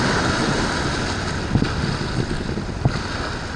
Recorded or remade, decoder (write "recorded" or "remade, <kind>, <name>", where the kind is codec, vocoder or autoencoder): recorded